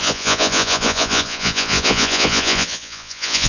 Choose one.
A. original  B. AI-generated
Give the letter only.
B